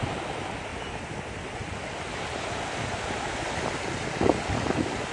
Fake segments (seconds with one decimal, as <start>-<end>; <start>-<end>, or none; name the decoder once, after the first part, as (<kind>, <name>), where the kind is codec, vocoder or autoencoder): none